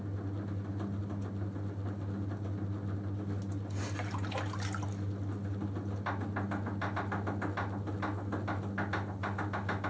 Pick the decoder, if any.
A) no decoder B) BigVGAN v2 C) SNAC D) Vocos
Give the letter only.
A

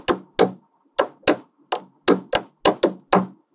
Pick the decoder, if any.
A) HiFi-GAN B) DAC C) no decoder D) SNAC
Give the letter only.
C